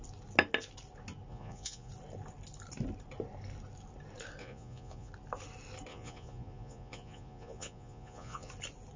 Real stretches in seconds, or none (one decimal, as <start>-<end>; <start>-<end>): 0.0-1.3; 1.9-4.4; 5.1-5.9; 8.5-9.0